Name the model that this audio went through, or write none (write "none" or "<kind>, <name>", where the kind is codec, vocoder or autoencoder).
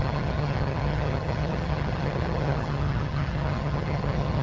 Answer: vocoder, HiFi-GAN